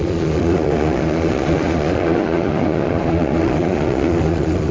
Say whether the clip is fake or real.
fake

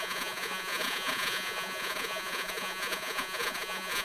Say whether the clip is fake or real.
fake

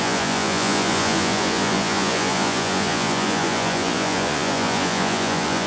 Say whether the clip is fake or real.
fake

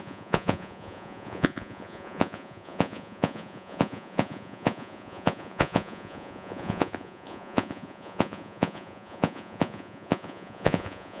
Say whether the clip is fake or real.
fake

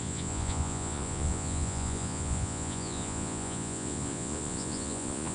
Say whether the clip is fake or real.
fake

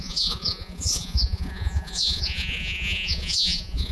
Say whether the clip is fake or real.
fake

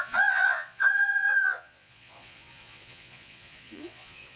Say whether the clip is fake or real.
fake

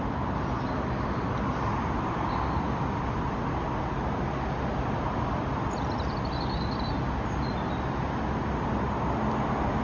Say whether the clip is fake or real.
real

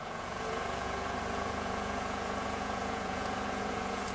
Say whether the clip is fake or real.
fake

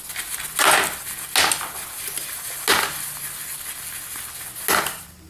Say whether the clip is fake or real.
real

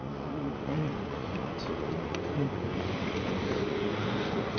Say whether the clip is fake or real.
fake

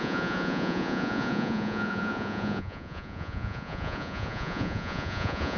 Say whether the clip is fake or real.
fake